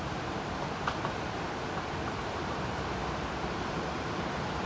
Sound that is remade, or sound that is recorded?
remade